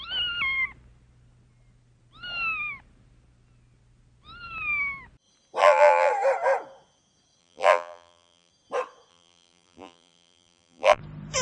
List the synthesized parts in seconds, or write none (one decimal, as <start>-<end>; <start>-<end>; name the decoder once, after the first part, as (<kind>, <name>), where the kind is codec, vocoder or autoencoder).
5.6-6.1 (vocoder, BigVGAN v2); 7.4-8.5; 9.1-11.0

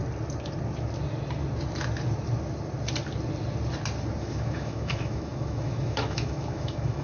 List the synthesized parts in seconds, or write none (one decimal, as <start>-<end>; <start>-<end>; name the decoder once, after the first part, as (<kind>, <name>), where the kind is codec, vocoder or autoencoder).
4.2-7.0 (autoencoder, DAC-VAE)

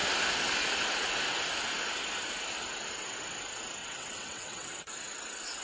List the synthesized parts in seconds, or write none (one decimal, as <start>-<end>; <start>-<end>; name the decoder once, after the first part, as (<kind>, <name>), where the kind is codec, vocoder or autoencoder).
3.8-4.8 (vocoder, WaveNeXt)

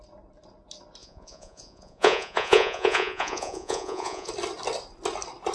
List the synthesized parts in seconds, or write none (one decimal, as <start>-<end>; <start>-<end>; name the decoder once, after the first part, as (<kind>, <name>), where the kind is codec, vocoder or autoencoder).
1.0-4.3 (vocoder, Vocos)

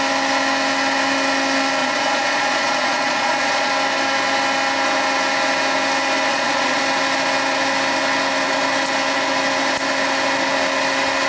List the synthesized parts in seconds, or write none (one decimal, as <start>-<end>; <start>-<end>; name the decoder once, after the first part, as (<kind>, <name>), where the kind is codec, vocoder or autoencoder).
1.8-3.7 (vocoder, Vocos); 6.3-6.8

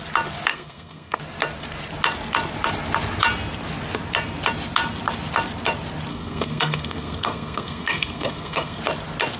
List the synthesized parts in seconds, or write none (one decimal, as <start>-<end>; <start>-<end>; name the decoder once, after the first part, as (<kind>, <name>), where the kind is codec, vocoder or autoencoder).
0.5-1.2 (codec, SNAC); 6.1-8.8